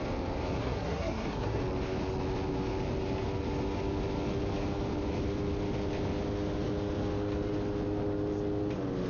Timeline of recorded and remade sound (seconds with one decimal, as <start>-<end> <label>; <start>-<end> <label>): 0.0-0.6 recorded; 0.6-1.6 remade; 1.6-9.1 recorded